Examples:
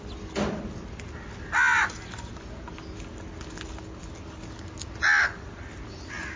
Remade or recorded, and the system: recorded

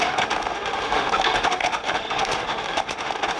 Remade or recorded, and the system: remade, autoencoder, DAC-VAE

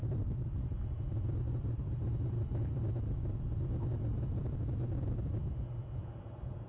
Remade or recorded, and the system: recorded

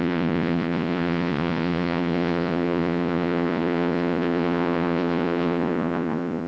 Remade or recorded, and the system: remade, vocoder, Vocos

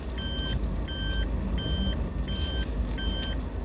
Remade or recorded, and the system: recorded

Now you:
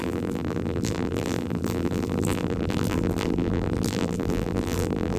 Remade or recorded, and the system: remade, vocoder, BigVGAN v2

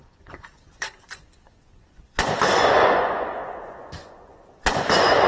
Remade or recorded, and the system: remade, vocoder, Vocos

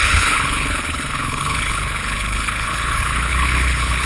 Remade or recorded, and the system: remade, codec, HILCodec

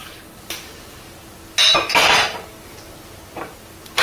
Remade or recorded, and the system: recorded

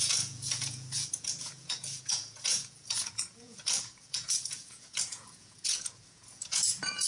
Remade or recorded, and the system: remade, vocoder, Vocos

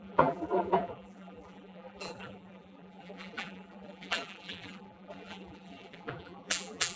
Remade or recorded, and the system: remade, vocoder, BigVGAN v2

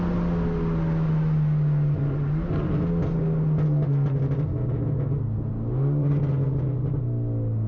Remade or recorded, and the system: recorded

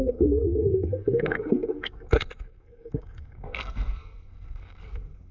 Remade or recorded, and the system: remade, codec, SNAC